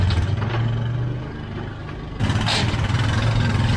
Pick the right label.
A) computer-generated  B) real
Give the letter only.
B